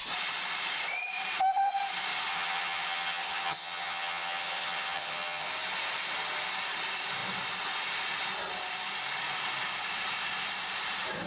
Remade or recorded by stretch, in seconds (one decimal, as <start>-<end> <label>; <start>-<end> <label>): 0.0-2.3 recorded; 2.3-5.5 remade; 5.5-11.3 recorded